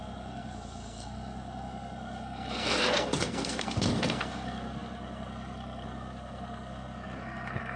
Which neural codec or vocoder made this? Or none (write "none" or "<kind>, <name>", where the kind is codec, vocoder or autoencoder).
codec, SNAC